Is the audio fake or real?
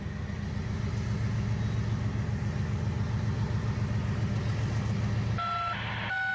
real